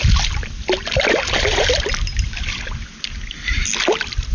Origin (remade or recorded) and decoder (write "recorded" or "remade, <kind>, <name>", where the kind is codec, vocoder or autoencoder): recorded